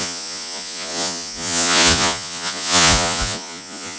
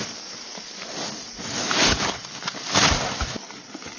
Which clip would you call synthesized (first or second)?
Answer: first